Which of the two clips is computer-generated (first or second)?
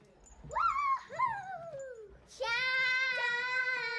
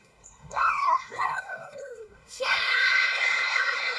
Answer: second